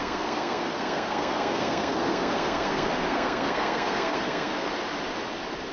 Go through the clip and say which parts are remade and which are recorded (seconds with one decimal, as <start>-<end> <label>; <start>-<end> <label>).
0.0-4.7 remade; 4.7-5.7 recorded